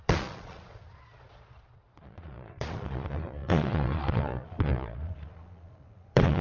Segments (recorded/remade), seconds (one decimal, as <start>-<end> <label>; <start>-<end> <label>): 0.0-6.4 remade